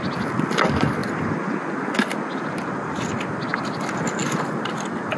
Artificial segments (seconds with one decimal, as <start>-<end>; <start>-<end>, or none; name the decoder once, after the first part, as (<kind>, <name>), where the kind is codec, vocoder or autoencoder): none